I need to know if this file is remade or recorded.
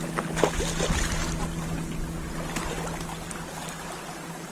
recorded